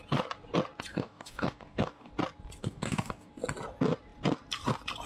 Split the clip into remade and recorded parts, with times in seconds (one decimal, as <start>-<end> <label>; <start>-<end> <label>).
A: 0.0-0.9 recorded; 0.9-2.1 remade; 2.1-2.6 recorded; 2.6-3.3 remade; 3.3-5.1 recorded